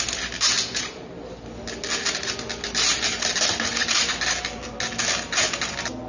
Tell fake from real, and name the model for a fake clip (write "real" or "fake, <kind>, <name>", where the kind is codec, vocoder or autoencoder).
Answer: real